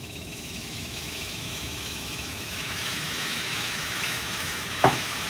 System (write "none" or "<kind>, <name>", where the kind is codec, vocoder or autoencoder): autoencoder, DAC-VAE